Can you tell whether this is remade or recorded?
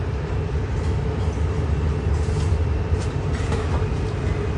recorded